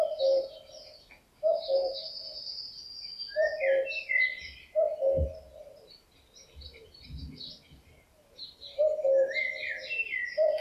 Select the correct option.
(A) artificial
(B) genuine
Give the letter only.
B